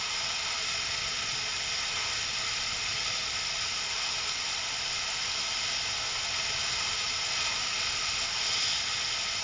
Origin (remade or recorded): recorded